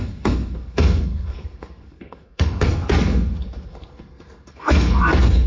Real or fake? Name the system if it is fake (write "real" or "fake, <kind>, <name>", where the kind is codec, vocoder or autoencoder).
fake, codec, SNAC